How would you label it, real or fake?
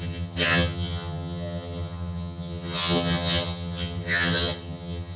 fake